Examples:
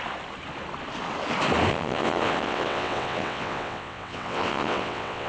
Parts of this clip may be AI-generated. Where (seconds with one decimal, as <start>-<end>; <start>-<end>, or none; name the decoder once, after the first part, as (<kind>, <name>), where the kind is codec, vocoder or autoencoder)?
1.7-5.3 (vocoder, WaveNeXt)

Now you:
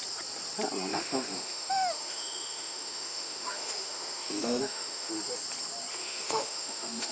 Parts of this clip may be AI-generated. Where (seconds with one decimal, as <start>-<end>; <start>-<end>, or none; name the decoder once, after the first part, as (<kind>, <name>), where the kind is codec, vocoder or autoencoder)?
0.9-5.1 (autoencoder, DAC-VAE); 5.9-7.1

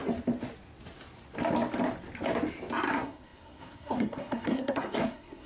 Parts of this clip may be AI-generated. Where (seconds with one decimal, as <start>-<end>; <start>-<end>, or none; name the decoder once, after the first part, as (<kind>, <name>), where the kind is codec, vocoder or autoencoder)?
2.9-5.5 (codec, SNAC)